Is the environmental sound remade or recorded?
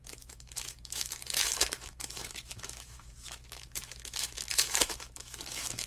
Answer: remade